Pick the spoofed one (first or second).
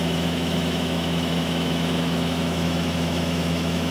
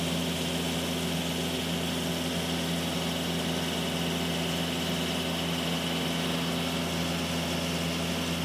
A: first